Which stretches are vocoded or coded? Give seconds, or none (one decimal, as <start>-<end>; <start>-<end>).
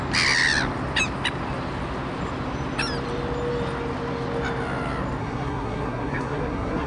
5.2-6.9